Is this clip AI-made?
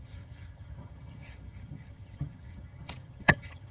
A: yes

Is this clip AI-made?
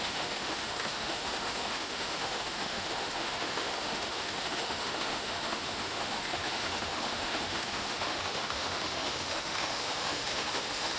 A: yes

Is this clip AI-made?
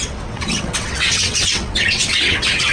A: yes